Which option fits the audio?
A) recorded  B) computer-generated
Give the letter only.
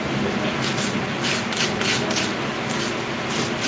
A